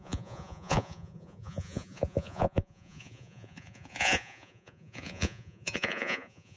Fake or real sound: fake